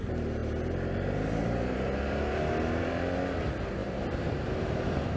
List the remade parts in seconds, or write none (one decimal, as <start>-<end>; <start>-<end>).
3.8-5.2